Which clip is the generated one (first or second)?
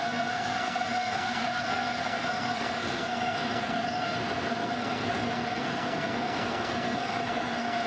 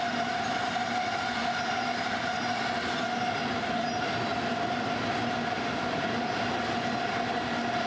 first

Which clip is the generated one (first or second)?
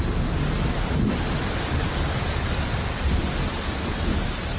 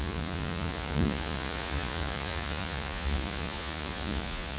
second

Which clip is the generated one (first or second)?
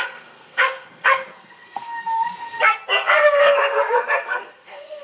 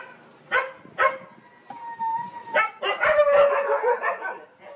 first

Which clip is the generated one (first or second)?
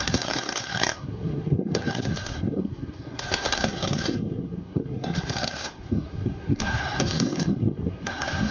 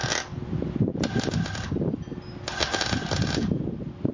first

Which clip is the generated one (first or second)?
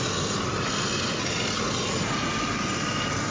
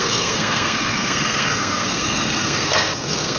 second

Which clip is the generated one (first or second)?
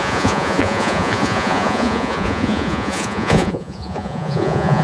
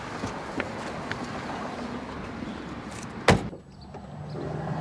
first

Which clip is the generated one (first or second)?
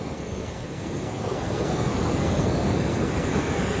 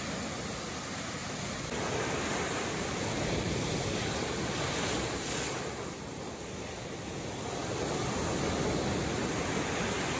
first